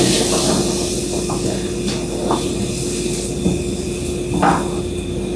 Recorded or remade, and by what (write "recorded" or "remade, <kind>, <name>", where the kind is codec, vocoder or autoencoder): recorded